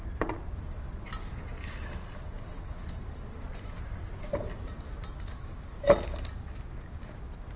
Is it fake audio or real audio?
real